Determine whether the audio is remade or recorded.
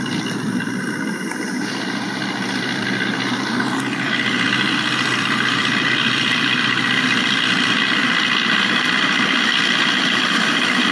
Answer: remade